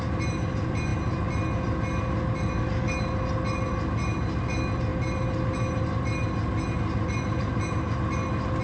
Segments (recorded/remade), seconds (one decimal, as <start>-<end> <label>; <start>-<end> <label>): 0.0-8.6 recorded